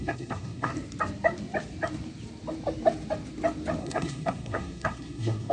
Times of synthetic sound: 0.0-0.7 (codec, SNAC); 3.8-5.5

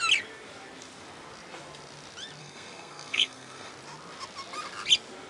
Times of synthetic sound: 2.4-3.7 (codec, SNAC)

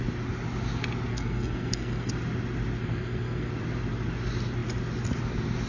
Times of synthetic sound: 1.1-2.1 (codec, SNAC); 2.8-3.5

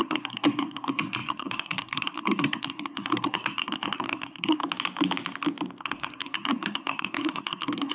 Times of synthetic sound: 0.0-4.6 (codec, SNAC); 5.8-7.9

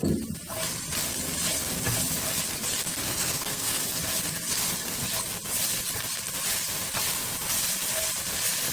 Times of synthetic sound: 2.8-3.8 (codec, SNAC)

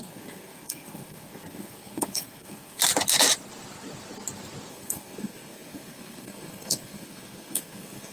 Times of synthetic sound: 0.0-2.8 (codec, SNAC); 4.7-8.1